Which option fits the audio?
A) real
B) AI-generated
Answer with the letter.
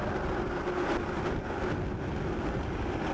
A